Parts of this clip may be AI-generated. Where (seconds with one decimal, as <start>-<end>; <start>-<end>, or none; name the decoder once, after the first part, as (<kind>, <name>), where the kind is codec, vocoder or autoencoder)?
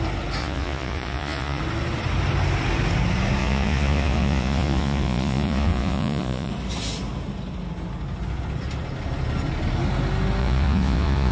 0.4-1.6 (vocoder, Vocos); 3.4-6.5; 10.4-11.3